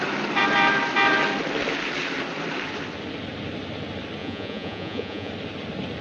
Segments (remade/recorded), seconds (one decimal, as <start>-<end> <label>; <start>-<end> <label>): 0.0-4.2 recorded; 4.2-5.3 remade; 5.3-6.0 recorded